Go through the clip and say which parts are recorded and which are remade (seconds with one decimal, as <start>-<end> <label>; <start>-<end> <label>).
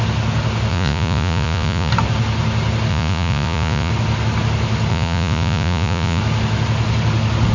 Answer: 0.0-0.7 recorded; 0.7-1.9 remade; 1.9-2.9 recorded; 2.9-3.9 remade; 3.9-4.9 recorded; 4.9-6.2 remade; 6.2-7.5 recorded